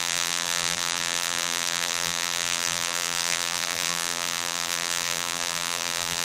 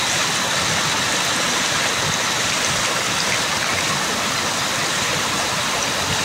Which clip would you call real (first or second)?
second